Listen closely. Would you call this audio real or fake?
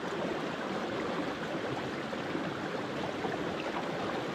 real